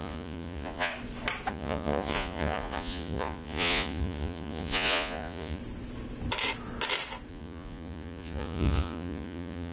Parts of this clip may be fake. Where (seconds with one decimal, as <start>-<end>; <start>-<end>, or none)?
0.0-0.9; 1.5-5.6; 7.3-9.7